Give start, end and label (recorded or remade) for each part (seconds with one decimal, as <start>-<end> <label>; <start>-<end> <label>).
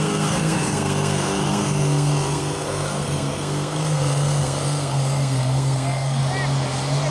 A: 0.0-6.2 remade; 6.2-7.1 recorded